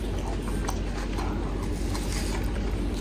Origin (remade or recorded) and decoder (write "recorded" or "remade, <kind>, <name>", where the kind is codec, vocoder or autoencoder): recorded